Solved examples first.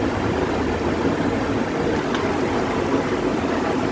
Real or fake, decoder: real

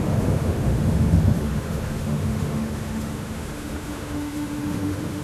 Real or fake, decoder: fake, autoencoder, DAC-VAE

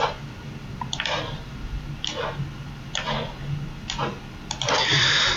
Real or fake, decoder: real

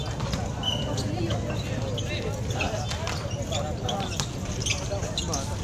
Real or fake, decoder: real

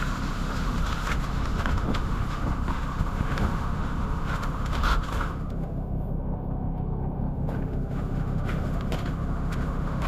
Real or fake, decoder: fake, autoencoder, DAC-VAE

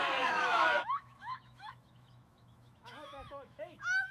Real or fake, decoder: fake, autoencoder, DAC-VAE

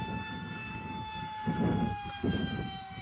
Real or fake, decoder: fake, autoencoder, DAC-VAE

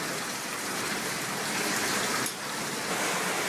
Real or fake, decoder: real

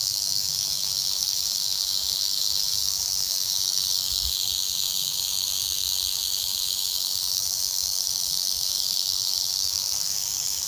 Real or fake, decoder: fake, autoencoder, DAC-VAE